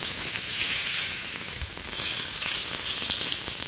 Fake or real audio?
fake